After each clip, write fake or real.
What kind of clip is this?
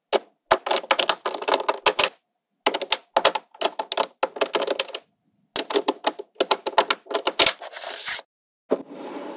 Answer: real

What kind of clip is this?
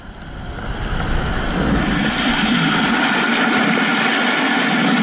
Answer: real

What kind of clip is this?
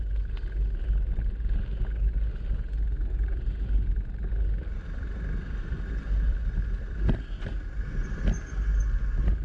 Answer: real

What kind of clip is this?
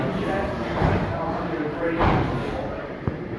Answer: fake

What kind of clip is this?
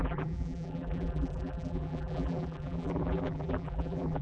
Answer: fake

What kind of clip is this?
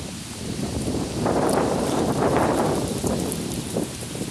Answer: fake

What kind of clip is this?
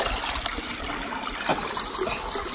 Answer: real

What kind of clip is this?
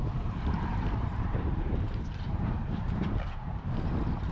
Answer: fake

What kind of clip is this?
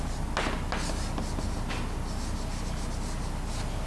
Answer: real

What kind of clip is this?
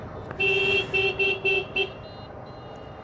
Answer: real